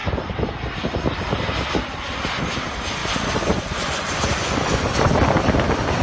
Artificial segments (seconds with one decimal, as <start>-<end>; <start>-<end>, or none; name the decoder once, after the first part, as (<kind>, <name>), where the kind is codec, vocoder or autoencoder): 3.0-4.9 (vocoder, Vocos)